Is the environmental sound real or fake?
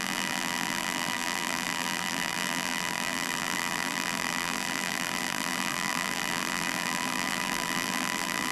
fake